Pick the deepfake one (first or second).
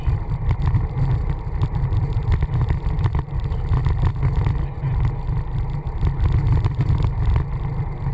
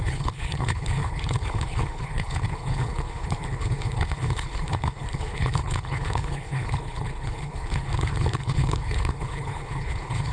second